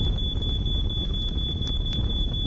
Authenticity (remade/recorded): remade